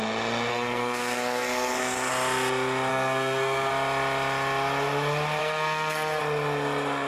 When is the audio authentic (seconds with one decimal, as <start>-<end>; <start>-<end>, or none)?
0.0-0.5; 2.1-2.9; 3.7-5.4; 6.2-7.1